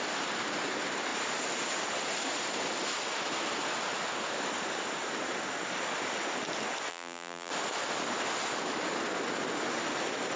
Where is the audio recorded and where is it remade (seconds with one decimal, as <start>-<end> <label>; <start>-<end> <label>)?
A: 0.0-6.9 recorded; 6.9-7.5 remade; 7.5-10.4 recorded